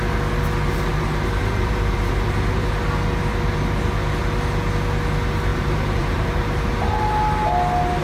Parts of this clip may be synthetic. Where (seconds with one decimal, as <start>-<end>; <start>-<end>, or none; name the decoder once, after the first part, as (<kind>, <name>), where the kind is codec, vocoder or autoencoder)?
0.9-2.7 (vocoder, BigVGAN v2); 5.5-6.7